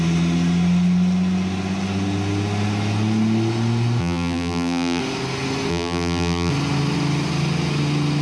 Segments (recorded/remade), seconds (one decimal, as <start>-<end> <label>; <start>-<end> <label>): 0.0-4.0 recorded; 4.0-5.0 remade; 5.0-5.7 recorded; 5.7-6.5 remade; 6.5-8.2 recorded